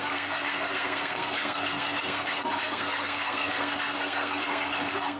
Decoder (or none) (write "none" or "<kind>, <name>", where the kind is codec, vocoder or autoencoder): codec, SNAC